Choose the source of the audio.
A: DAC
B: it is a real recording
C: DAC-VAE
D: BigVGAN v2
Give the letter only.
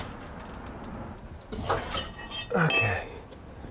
B